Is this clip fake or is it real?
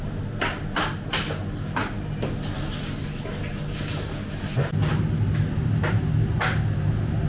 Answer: real